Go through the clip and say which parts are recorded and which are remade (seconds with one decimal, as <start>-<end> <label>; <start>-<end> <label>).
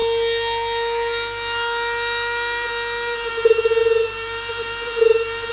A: 0.0-3.3 recorded; 3.3-5.5 remade